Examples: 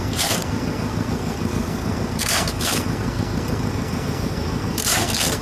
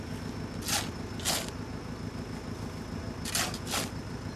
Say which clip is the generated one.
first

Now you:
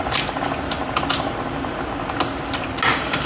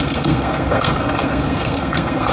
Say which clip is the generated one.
second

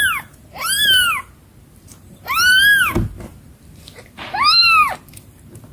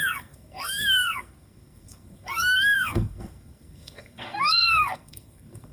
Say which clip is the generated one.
second